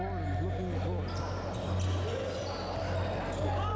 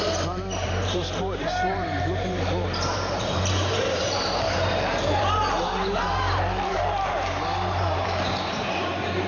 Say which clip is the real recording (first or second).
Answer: first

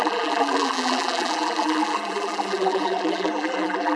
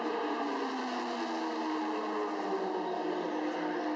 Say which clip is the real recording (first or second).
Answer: second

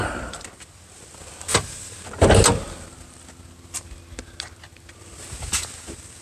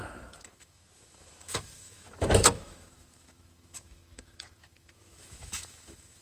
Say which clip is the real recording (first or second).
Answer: first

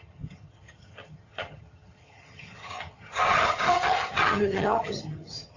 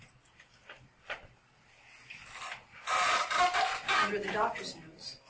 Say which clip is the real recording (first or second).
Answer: second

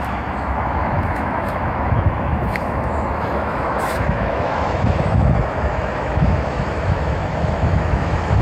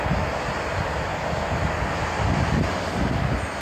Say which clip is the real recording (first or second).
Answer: second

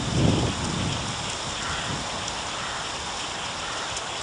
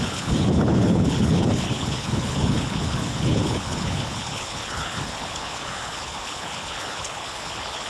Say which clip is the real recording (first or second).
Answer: first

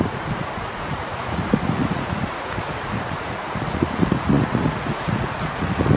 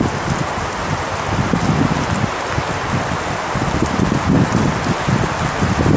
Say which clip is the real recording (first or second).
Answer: second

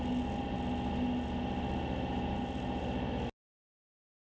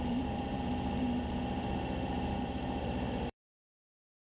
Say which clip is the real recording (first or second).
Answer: first